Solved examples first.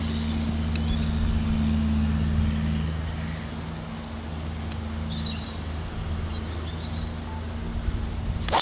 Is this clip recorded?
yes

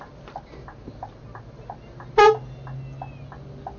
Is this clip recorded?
yes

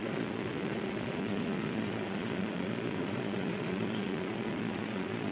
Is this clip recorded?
no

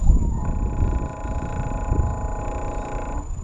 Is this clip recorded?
yes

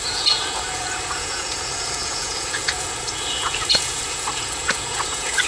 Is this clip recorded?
no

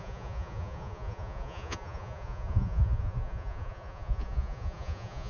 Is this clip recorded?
no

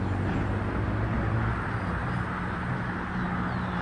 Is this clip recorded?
yes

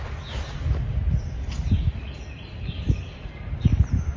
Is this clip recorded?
yes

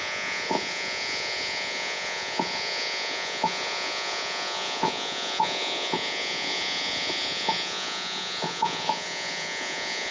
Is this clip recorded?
no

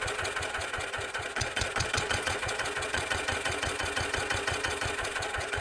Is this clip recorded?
no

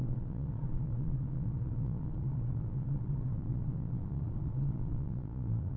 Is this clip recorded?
no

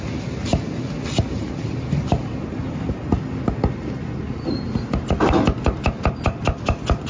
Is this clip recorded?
yes